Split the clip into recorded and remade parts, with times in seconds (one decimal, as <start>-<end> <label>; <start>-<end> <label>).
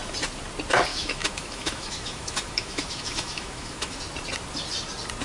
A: 0.0-0.9 recorded; 0.9-4.0 remade; 4.0-5.2 recorded